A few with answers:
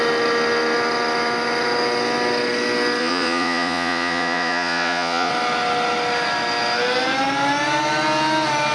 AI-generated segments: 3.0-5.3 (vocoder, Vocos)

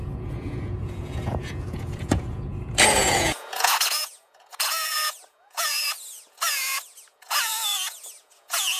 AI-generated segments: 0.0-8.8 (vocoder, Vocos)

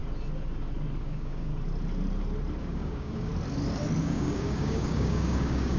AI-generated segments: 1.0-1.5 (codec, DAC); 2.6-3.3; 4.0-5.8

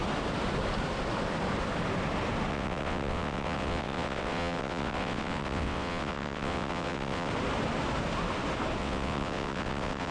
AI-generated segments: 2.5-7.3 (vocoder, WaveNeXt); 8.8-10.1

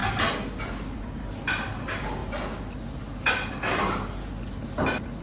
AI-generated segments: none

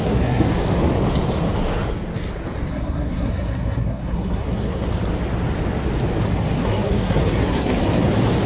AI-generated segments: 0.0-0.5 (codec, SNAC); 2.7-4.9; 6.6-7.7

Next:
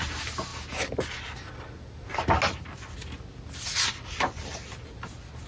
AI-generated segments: none